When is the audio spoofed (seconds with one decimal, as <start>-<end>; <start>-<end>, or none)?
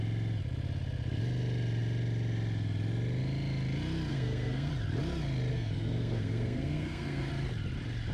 4.1-4.7; 5.5-7.3